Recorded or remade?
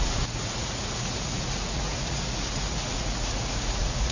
remade